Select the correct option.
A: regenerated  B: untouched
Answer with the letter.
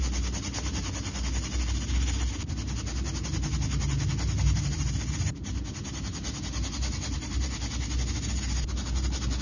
B